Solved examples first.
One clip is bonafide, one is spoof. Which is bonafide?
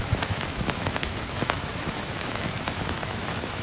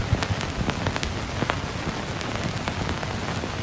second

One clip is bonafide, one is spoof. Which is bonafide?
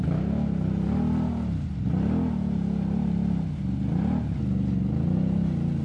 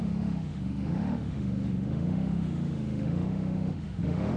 first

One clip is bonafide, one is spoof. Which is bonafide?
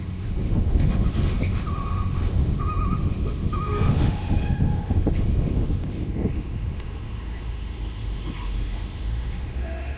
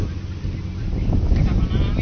second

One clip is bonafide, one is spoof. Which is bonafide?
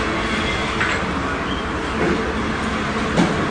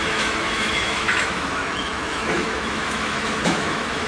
first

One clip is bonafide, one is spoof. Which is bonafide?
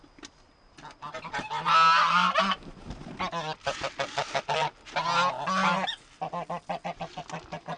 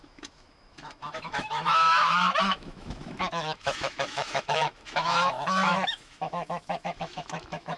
first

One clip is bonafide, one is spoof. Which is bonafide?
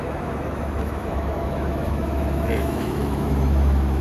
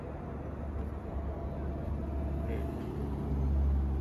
second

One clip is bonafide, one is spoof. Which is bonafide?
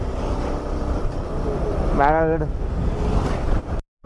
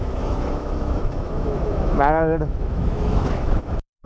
first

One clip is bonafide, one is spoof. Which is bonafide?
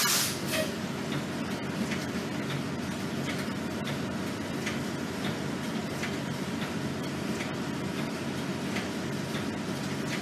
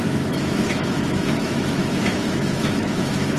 first